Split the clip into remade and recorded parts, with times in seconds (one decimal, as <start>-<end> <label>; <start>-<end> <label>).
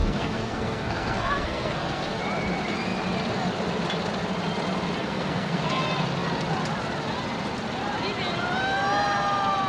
0.0-2.2 remade; 2.2-5.0 recorded; 5.0-5.8 remade; 5.8-9.7 recorded